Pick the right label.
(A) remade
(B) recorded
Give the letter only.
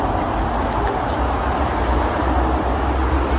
B